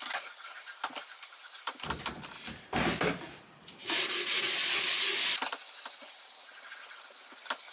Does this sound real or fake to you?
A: real